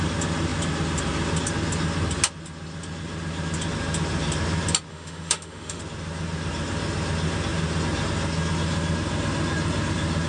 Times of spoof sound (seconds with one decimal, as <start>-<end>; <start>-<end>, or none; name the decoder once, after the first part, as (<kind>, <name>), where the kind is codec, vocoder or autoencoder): 4.9-5.8 (autoencoder, DAC-VAE)